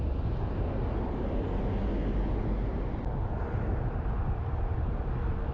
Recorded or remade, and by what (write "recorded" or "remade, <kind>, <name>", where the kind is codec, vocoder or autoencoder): recorded